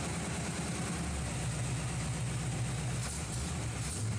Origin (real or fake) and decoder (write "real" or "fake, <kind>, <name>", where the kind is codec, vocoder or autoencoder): real